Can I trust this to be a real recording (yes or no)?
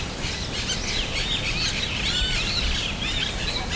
yes